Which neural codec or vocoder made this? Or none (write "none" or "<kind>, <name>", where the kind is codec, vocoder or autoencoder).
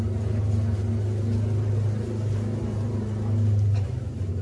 none